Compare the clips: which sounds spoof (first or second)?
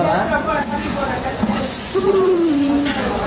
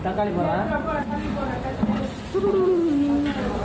first